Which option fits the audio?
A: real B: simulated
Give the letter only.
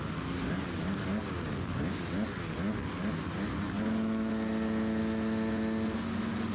A